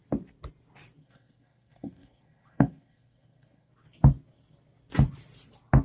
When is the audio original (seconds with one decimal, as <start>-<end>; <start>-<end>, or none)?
0.0-1.0; 3.7-5.8